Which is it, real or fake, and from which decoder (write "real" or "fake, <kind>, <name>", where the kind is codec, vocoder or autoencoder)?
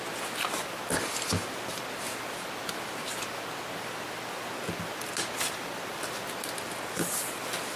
real